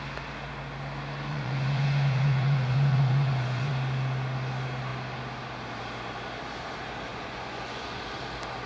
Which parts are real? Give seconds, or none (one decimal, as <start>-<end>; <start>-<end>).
0.0-1.3; 3.7-7.1; 8.0-8.7